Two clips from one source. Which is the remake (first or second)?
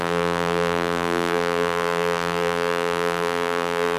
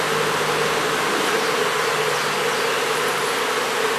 first